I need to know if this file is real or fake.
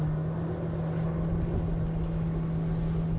real